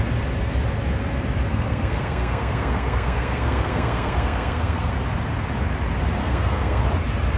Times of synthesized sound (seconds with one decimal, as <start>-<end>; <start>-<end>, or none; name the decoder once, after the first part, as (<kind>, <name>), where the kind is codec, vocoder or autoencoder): 1.5-4.9 (codec, SNAC); 6.2-6.8